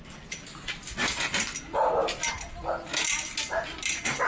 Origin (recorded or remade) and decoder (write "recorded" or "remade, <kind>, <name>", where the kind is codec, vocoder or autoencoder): recorded